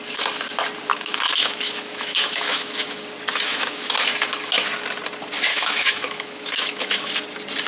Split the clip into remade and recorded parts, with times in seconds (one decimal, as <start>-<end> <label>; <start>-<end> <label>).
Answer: 0.0-0.9 recorded; 0.9-3.0 remade; 3.0-3.5 recorded; 3.5-4.1 remade; 4.1-5.5 recorded; 5.5-7.0 remade; 7.0-7.7 recorded